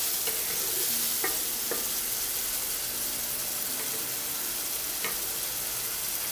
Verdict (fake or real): real